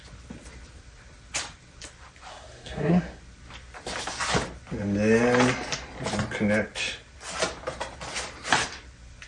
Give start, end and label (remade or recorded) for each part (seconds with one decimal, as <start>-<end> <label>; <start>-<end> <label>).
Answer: 0.0-2.3 recorded; 2.3-3.2 remade; 3.2-9.3 recorded